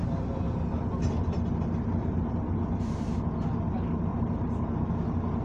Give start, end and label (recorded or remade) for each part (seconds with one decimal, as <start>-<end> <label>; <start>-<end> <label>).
0.0-3.2 remade; 3.2-4.1 recorded; 4.1-4.9 remade; 4.9-5.4 recorded